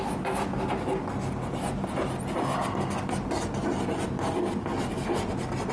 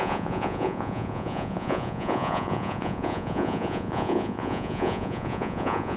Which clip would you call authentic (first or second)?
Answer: first